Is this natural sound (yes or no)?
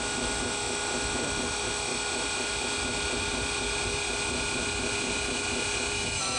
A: yes